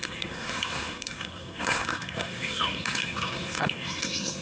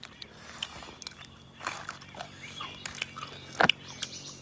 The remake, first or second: first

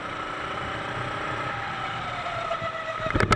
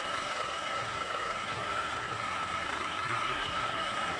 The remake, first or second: second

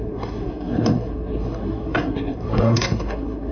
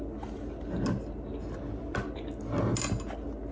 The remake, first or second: first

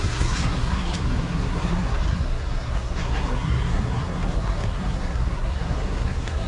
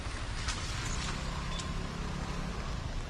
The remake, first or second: first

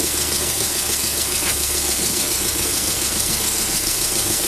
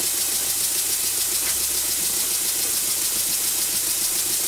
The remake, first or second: first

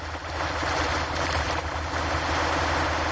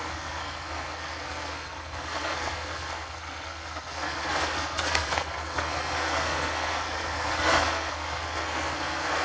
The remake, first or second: second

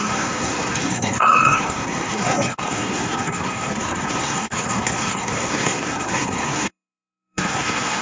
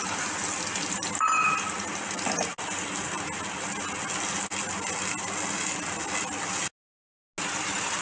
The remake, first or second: first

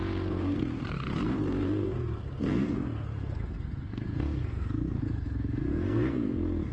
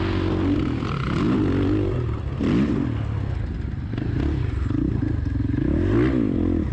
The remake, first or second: first